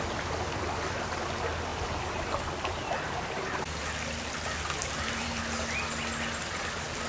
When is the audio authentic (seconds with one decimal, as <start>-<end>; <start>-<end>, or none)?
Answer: 0.0-4.8; 5.4-7.1